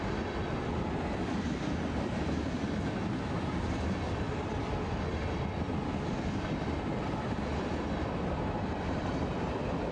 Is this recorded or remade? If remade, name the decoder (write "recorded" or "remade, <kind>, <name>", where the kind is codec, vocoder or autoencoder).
recorded